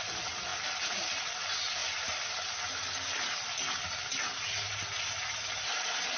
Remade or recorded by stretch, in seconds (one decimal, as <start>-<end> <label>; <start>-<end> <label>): 0.0-6.2 recorded